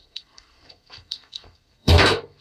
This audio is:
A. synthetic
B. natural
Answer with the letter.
A